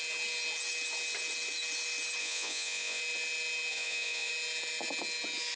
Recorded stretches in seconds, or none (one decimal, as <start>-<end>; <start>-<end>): 0.0-2.2; 3.0-3.7; 4.3-5.6